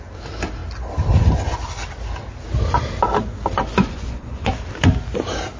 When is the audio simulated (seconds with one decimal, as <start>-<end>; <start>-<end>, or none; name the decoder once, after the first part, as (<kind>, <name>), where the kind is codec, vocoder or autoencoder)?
3.8-4.5 (vocoder, Vocos)